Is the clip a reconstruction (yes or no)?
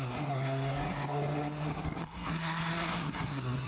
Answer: yes